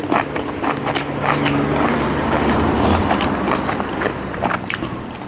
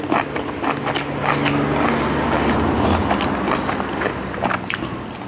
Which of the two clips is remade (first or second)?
first